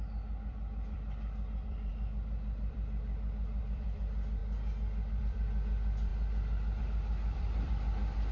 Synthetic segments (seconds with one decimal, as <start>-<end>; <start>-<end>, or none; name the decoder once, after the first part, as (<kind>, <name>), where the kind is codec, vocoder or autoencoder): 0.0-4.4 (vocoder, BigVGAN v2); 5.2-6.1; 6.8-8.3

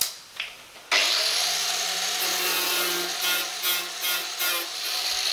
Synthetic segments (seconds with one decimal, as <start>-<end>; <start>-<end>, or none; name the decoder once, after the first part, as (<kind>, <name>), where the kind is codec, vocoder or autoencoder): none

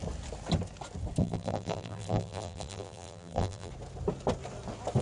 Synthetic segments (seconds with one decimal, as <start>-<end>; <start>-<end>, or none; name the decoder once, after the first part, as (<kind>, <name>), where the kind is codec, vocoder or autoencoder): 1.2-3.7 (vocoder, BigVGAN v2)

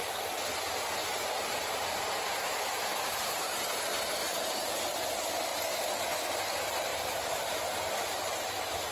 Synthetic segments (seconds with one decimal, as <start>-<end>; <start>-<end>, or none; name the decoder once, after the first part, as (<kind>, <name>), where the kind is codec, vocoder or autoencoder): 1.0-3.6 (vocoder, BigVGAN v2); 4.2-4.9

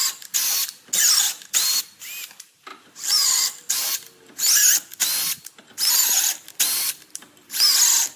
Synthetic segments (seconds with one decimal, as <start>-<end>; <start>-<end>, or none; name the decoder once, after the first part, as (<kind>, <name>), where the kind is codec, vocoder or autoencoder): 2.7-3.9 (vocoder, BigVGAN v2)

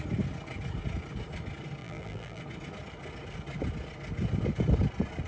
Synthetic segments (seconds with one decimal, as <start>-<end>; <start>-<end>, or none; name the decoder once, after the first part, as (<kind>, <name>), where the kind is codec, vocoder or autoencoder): 1.8-2.4 (vocoder, BigVGAN v2)

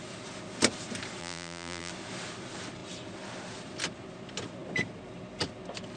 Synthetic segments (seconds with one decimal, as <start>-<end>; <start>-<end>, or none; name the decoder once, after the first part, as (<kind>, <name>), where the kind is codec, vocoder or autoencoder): 1.2-1.9 (vocoder, BigVGAN v2)